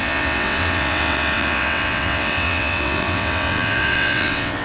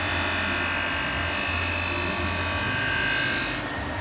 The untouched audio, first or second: second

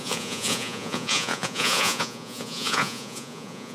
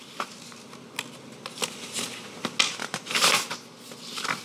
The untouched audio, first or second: second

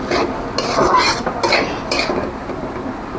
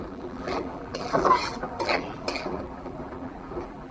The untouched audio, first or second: first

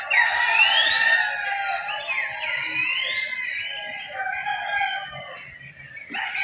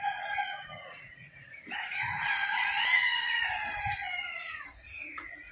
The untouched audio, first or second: first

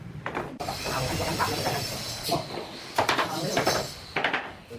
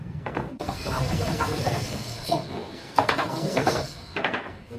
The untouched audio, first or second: first